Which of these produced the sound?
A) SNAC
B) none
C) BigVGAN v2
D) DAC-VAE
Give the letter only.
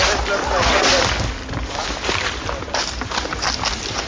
B